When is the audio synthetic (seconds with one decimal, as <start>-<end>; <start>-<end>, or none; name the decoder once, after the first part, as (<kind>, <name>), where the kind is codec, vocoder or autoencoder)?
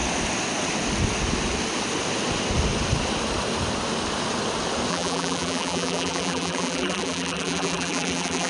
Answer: 4.9-8.5 (vocoder, BigVGAN v2)